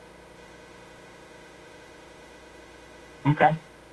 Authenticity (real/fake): fake